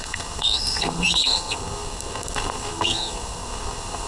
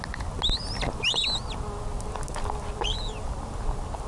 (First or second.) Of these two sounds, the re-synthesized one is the first